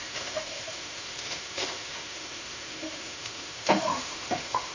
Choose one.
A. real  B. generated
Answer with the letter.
B